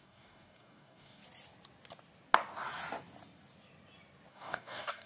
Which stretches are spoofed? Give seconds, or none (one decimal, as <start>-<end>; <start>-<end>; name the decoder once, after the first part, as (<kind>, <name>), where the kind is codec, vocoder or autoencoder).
0.0-1.2 (codec, DAC); 4.3-5.1